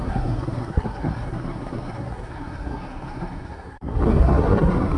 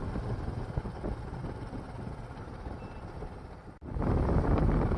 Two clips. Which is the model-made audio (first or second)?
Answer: first